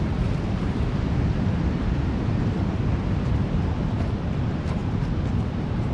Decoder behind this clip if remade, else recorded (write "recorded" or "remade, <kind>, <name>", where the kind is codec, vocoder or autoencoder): remade, vocoder, BigVGAN v2